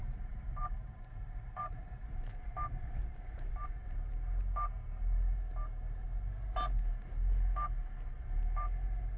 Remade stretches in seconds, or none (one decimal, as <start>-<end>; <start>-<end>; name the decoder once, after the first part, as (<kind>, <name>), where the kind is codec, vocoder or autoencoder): 0.0-3.5 (vocoder, BigVGAN v2)